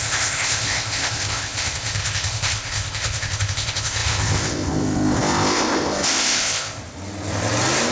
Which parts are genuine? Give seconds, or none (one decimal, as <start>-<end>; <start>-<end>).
6.8-7.9